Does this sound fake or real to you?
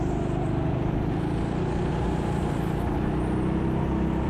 real